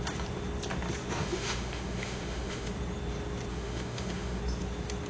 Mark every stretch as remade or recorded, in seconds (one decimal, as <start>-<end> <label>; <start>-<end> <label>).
0.0-1.2 recorded; 1.2-2.7 remade; 2.7-3.5 recorded; 3.5-4.4 remade; 4.4-5.1 recorded